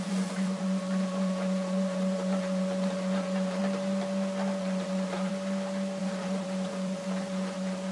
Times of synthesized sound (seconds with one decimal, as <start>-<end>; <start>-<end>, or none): 0.0-3.6; 4.6-5.3; 6.0-7.9